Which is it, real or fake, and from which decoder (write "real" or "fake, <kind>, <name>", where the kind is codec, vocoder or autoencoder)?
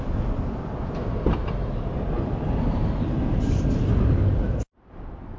real